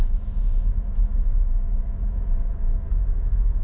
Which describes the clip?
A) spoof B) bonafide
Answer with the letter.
A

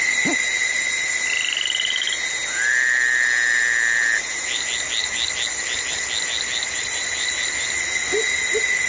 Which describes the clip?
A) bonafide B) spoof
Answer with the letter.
A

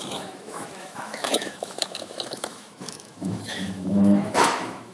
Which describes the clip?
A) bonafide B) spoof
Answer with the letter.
B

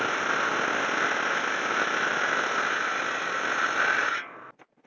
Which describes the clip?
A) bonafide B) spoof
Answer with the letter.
A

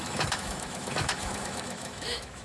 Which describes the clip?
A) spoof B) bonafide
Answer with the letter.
A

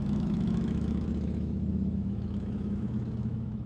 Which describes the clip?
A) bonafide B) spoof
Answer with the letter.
B